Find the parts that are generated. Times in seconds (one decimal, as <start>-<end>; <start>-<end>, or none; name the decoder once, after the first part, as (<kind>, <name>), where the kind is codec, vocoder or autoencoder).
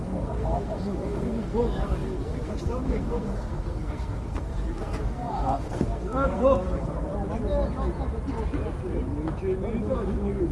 0.0-7.1 (codec, SNAC); 9.8-10.5